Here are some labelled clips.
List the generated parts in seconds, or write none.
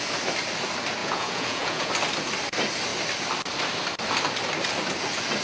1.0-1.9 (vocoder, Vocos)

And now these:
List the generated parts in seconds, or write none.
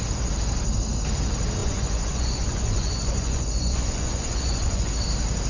1.6-4.9 (vocoder, Vocos)